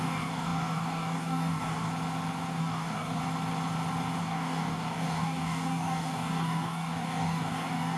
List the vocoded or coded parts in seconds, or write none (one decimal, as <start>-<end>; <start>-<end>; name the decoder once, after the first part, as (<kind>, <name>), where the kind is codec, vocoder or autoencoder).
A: 0.0-1.9 (codec, DAC); 2.6-3.2; 4.2-8.0